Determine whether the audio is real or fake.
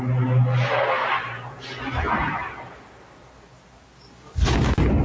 real